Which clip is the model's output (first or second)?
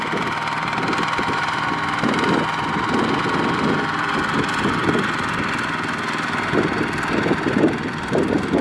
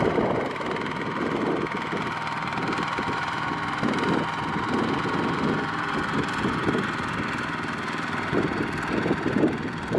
second